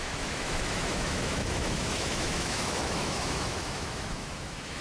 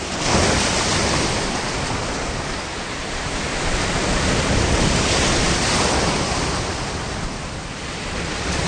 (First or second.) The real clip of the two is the second